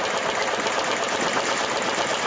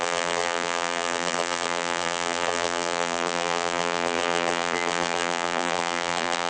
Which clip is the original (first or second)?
first